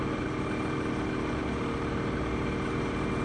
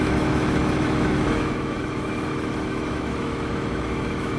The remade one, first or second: second